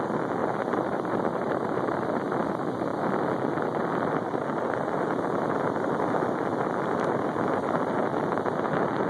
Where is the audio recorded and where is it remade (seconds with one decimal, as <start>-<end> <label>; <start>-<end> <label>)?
0.0-0.4 recorded; 0.4-1.8 remade; 1.8-9.1 recorded